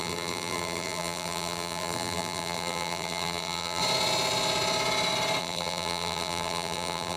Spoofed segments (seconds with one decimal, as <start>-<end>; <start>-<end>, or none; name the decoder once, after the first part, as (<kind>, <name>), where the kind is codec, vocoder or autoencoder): 0.0-3.8 (vocoder, BigVGAN v2); 5.4-7.2